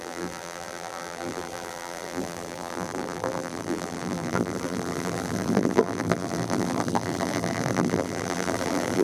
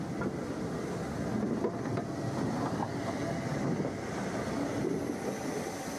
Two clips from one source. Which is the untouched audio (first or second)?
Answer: second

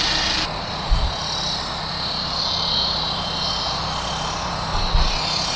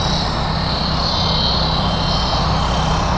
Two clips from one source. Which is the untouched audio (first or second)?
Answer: second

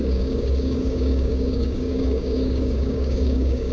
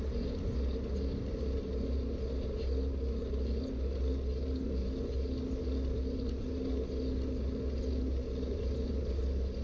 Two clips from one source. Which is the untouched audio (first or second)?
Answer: second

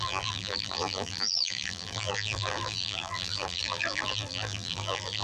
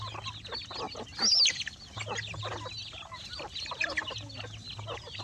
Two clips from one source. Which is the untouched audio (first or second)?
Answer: second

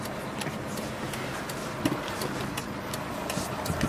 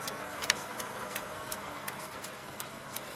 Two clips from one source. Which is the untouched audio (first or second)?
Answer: first